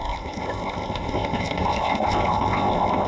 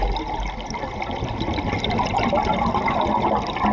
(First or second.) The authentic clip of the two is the second